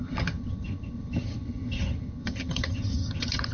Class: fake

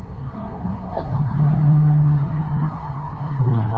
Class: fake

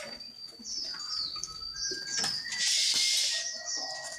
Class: real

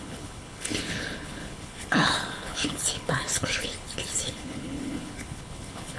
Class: fake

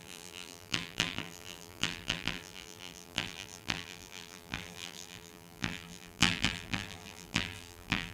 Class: fake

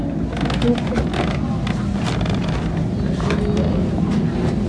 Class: real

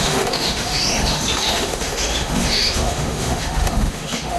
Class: fake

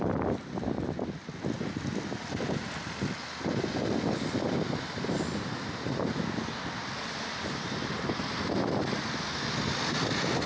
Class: real